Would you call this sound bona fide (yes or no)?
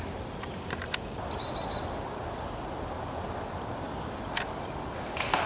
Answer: yes